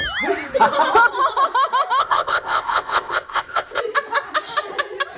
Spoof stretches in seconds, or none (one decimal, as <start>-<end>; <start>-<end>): 2.0-3.8